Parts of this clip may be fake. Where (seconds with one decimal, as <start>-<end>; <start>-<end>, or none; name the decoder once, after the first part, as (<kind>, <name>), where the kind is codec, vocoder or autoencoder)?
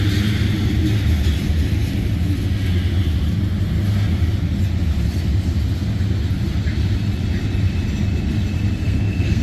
8.8-9.4 (codec, SNAC)